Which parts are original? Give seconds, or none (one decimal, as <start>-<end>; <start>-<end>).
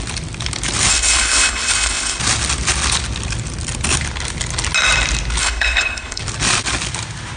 0.0-0.9; 2.2-5.4; 6.2-7.4